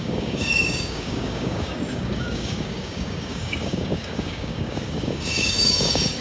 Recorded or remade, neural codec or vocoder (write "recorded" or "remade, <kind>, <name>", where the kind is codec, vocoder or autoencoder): remade, codec, DAC